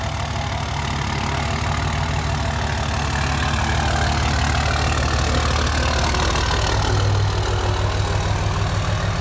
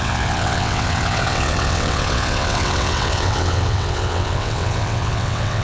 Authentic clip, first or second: first